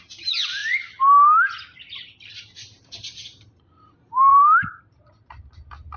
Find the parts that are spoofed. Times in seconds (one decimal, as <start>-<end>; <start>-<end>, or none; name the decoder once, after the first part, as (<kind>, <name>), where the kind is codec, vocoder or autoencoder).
0.0-0.6 (vocoder, BigVGAN v2); 2.3-6.0